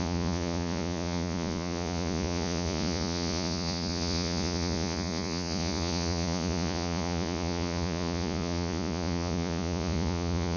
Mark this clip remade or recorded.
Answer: remade